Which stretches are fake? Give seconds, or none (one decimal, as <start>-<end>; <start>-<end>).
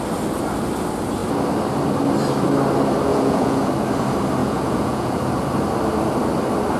3.1-3.7; 4.4-5.2